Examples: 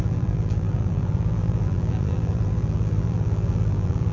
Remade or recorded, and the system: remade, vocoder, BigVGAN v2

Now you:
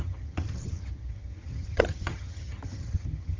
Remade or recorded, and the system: remade, vocoder, HiFi-GAN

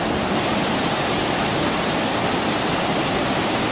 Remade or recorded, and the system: recorded